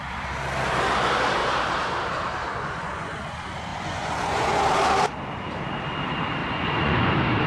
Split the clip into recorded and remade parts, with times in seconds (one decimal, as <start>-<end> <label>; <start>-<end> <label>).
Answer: 0.0-2.5 recorded; 2.5-3.2 remade; 3.2-3.7 recorded; 3.7-4.6 remade; 4.6-6.4 recorded; 6.4-7.1 remade; 7.1-7.5 recorded